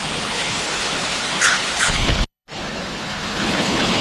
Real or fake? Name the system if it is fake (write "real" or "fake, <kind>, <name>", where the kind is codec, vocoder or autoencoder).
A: fake, codec, HILCodec